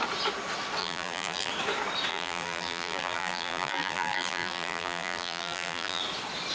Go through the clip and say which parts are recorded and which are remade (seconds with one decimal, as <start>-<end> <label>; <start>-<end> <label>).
0.0-0.8 recorded; 0.8-1.5 remade; 1.5-2.1 recorded; 2.1-6.0 remade; 6.0-6.5 recorded